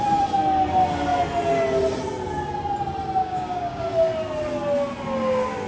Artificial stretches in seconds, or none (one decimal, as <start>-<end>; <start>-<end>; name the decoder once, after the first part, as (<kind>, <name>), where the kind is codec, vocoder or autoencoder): 3.2-3.8 (codec, DAC)